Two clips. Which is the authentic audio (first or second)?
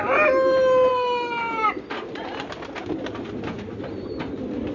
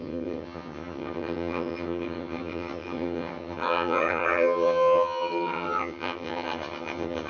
first